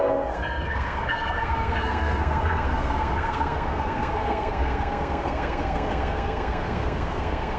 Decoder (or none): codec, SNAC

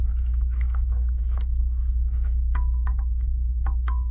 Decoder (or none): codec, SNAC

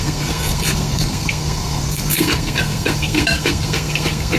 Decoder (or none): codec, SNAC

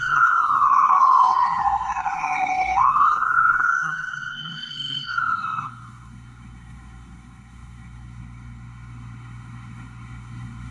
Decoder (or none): codec, SNAC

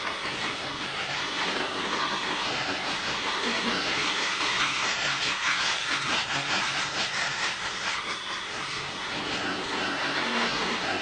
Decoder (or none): codec, SNAC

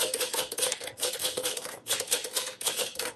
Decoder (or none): codec, SNAC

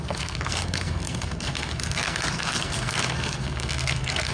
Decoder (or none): codec, SNAC